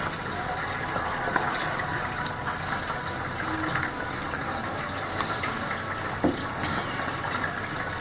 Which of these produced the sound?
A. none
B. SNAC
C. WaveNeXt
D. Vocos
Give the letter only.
A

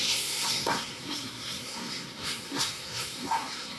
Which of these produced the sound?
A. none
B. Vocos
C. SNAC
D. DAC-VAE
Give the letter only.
C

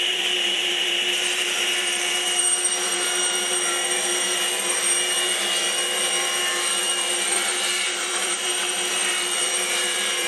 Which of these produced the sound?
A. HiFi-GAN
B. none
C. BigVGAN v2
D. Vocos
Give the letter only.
C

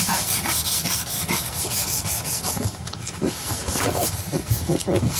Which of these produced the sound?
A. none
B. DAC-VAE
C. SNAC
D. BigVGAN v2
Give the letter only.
C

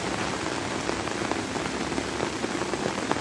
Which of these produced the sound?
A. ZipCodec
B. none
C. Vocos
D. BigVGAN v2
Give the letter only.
B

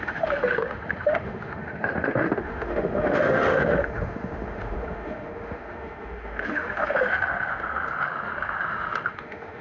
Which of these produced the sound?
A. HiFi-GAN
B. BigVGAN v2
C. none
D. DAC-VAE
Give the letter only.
D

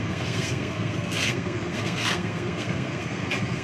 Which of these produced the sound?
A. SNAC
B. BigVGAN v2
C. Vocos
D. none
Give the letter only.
A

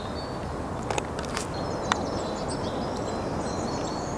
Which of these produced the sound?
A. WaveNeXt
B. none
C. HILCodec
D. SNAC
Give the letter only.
B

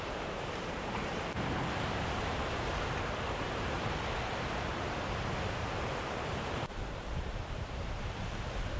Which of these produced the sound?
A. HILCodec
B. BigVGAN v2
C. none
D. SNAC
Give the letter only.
B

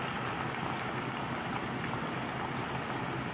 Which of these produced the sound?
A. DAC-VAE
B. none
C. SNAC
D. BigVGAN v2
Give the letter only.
B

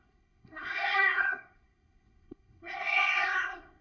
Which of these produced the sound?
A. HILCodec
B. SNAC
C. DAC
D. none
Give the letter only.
B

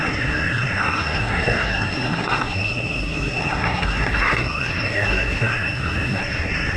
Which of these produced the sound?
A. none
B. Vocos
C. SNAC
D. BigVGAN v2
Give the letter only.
C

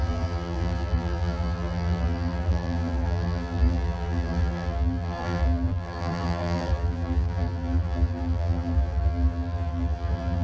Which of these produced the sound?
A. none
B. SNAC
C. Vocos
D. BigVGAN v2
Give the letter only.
D